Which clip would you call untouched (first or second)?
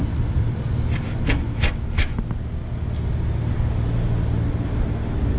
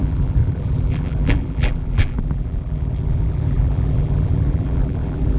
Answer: first